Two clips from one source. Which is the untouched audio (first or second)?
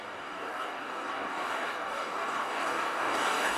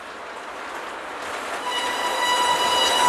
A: second